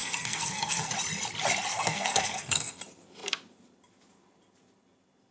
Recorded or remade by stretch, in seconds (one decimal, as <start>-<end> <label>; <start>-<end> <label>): 0.0-0.9 remade; 0.9-1.7 recorded; 1.7-2.8 remade; 2.8-5.3 recorded